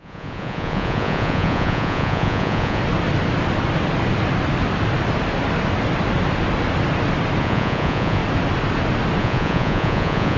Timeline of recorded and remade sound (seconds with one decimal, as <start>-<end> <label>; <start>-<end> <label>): 0.0-2.8 remade; 2.8-7.4 recorded; 7.4-8.2 remade; 8.2-9.2 recorded; 9.2-10.4 remade